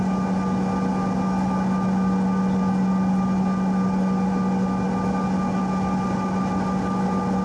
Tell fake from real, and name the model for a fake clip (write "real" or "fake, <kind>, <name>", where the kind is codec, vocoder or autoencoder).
real